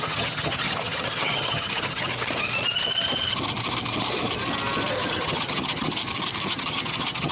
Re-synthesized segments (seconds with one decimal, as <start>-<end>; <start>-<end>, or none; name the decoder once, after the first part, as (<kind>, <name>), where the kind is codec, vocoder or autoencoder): 0.0-2.1 (vocoder, HiFi-GAN); 5.1-6.0; 6.5-7.3